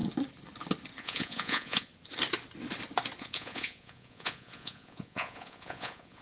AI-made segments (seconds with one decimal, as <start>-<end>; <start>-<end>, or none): 1.0-1.9; 3.2-6.2